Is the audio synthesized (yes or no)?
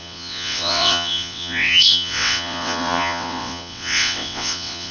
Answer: yes